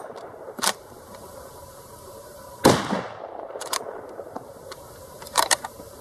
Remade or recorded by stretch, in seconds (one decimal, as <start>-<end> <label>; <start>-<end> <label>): 0.0-2.6 remade; 2.6-3.3 recorded; 3.3-6.0 remade